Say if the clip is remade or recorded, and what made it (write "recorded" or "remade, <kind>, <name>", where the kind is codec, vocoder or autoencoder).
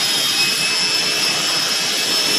recorded